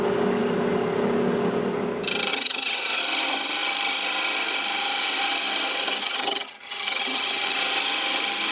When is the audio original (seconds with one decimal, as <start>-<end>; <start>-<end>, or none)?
0.0-2.3; 3.0-6.0; 7.6-8.5